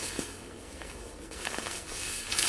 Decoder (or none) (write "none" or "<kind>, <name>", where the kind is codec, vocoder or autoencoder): codec, SNAC